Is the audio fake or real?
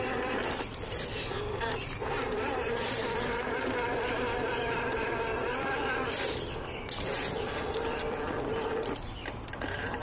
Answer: real